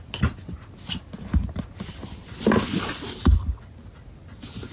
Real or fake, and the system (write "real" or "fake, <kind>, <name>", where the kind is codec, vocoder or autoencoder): real